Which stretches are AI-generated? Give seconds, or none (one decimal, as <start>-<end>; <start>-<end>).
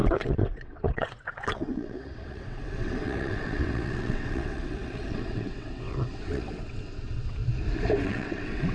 0.0-7.4; 8.0-8.7